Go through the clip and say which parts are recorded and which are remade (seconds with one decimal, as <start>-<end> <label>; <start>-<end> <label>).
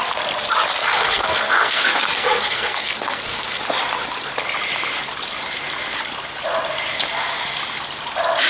0.0-0.8 recorded; 0.8-3.6 remade; 3.6-8.5 recorded